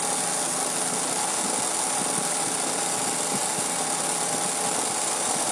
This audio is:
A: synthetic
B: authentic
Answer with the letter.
B